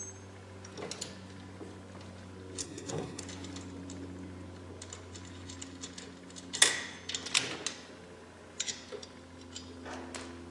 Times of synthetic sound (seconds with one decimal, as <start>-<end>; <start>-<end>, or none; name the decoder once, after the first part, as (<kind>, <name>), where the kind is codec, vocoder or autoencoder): 2.6-3.2 (codec, SNAC)